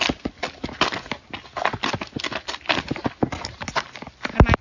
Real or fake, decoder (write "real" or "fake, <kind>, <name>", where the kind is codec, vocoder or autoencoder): real